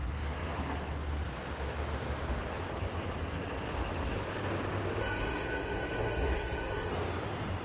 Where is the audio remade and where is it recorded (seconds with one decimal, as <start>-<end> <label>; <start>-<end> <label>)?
0.0-5.0 recorded; 5.0-6.9 remade; 6.9-7.6 recorded

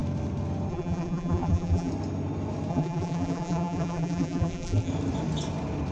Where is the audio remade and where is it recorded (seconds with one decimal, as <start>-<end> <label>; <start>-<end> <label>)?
0.0-0.7 recorded; 0.7-1.9 remade; 1.9-2.7 recorded; 2.7-4.9 remade; 4.9-5.9 recorded